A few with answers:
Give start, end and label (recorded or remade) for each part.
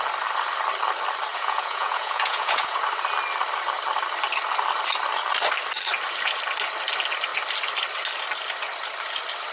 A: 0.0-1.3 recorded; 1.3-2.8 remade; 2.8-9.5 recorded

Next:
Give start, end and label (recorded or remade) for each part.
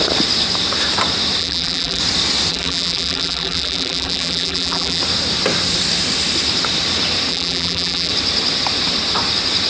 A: 0.0-1.4 recorded; 1.4-2.0 remade; 2.0-2.5 recorded; 2.5-5.0 remade; 5.0-7.3 recorded; 7.3-8.1 remade; 8.1-9.7 recorded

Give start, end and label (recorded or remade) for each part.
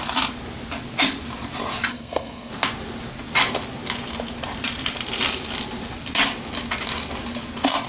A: 0.0-1.9 recorded; 1.9-2.5 remade; 2.5-7.9 recorded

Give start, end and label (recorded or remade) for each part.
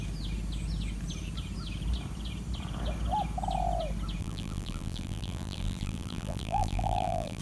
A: 0.0-4.2 recorded; 4.2-7.4 remade